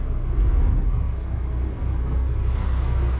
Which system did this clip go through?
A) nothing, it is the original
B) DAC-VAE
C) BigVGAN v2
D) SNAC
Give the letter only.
D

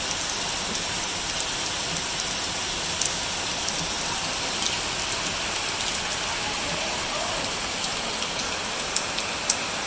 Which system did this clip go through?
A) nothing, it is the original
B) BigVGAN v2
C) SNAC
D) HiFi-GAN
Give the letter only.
A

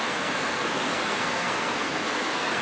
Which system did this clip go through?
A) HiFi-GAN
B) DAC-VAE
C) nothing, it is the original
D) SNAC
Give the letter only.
D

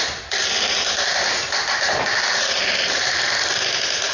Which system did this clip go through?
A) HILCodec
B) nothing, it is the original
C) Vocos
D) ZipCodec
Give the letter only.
B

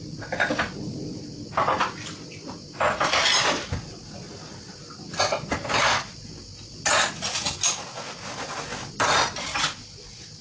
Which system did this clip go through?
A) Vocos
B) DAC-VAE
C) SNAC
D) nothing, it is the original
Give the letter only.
D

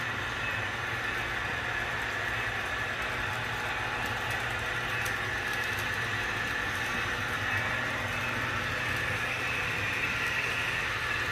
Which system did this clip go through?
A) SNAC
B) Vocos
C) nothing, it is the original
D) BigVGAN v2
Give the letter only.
C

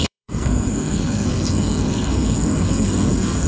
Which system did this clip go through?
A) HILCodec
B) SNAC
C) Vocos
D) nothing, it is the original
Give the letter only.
B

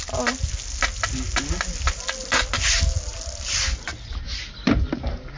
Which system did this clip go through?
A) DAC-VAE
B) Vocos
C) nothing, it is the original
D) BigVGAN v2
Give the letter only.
C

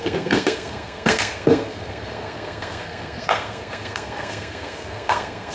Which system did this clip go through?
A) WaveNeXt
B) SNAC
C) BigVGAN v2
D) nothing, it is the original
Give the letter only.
B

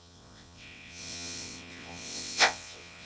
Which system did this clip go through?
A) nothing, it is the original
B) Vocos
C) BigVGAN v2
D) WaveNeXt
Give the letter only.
D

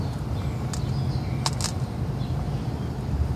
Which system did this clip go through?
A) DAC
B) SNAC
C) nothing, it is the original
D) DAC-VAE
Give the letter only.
C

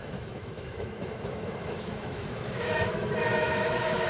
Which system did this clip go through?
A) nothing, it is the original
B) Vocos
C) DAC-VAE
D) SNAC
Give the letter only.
C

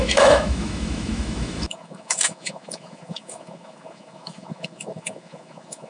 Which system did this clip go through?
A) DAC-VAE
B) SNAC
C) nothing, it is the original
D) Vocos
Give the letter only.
A